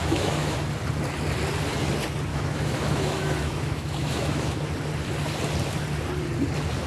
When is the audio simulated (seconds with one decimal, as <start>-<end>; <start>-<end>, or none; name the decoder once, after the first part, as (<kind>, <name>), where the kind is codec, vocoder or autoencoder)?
0.0-0.6 (autoencoder, DAC-VAE); 2.3-4.6